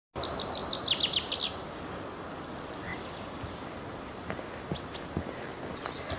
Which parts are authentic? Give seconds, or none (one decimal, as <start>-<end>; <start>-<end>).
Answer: 0.0-6.2

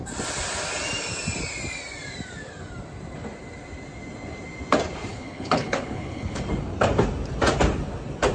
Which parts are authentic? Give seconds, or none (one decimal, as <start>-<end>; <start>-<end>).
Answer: 0.0-5.1; 6.4-8.3

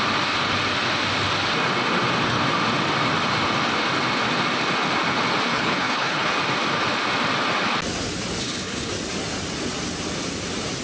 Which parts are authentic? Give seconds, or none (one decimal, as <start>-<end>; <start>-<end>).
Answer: 0.0-5.5; 6.3-8.4; 8.9-10.8

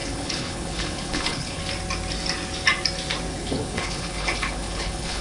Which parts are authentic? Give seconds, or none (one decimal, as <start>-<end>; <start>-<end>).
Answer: 1.6-3.3

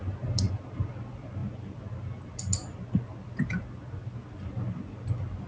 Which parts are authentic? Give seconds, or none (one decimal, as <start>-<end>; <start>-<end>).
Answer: 0.0-5.5

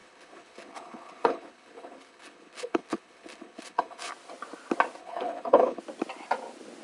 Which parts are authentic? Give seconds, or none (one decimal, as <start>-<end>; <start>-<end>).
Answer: 4.1-5.0; 5.8-6.8